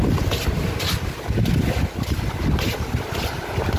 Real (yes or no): yes